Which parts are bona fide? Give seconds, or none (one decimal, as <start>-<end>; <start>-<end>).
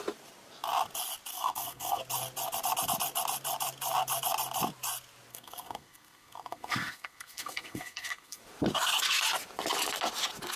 0.0-1.3; 2.0-5.3; 8.4-10.6